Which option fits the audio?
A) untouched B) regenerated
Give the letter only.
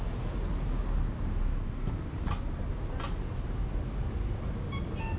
A